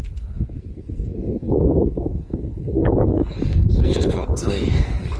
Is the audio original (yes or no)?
no